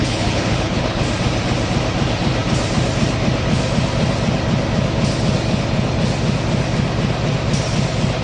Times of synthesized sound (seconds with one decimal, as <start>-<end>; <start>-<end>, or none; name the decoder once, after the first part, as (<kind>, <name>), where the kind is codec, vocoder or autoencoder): 0.0-1.0 (codec, HILCodec)